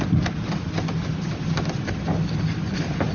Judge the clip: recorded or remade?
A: recorded